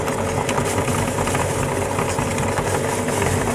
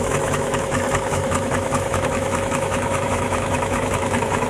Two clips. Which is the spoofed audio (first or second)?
second